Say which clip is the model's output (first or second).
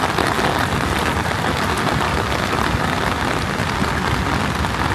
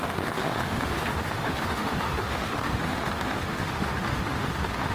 second